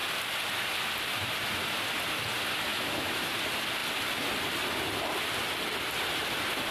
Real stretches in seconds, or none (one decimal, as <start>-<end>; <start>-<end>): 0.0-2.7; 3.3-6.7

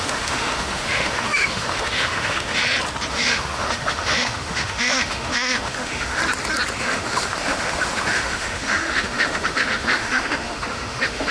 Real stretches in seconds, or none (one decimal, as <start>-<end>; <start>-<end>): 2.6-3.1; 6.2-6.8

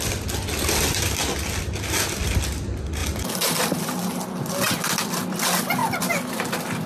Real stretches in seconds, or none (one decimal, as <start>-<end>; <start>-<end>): 0.0-6.9

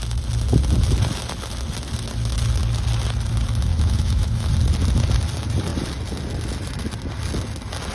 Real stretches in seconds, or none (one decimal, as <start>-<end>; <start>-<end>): 0.0-3.7; 4.5-7.9